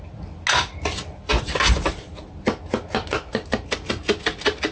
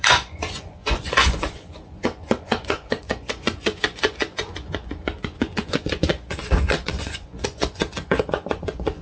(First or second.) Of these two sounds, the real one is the first